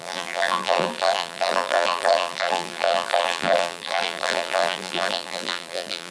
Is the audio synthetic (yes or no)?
yes